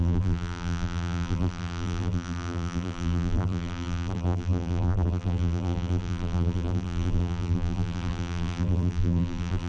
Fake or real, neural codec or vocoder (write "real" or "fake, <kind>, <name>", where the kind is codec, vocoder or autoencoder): fake, vocoder, BigVGAN v2